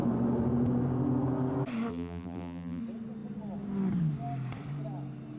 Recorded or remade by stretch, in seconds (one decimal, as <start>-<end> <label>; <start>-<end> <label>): 0.0-1.9 recorded; 1.9-2.8 remade; 2.8-5.4 recorded